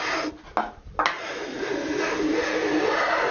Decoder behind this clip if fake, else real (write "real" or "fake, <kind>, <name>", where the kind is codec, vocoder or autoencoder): real